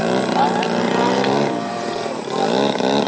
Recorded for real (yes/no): no